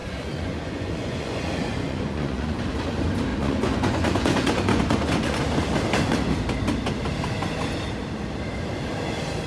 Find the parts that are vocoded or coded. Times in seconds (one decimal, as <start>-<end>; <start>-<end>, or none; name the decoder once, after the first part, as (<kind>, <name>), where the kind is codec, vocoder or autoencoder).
0.0-2.8 (vocoder, Vocos); 3.3-5.4